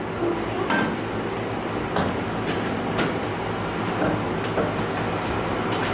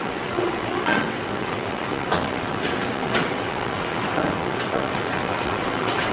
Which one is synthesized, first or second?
second